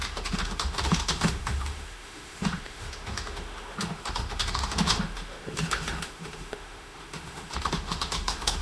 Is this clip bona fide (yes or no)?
no